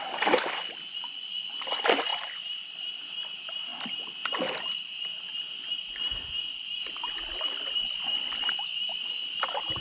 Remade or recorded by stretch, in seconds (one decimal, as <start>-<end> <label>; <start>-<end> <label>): 0.0-9.8 recorded